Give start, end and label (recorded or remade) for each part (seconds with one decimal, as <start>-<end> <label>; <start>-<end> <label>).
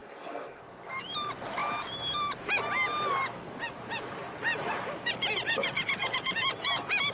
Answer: 0.0-0.6 remade; 0.6-7.1 recorded